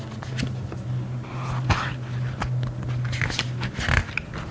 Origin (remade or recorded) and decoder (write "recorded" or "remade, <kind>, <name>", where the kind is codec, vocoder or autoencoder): recorded